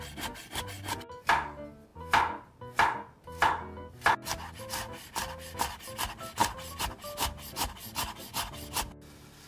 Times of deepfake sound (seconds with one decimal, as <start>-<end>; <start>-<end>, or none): none